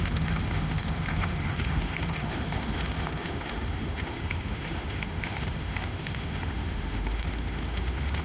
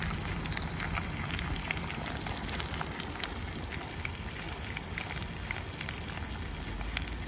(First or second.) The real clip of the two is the second